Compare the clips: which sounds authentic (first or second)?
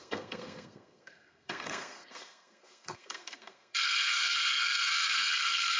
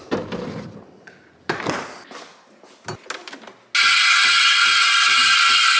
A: second